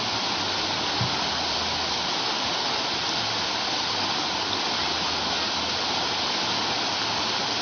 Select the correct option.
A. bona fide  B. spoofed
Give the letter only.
A